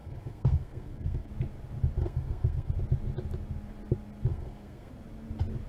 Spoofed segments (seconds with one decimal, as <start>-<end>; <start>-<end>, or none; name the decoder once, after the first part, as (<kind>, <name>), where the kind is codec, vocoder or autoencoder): 0.0-1.3 (codec, SNAC); 2.0-2.7; 4.3-4.9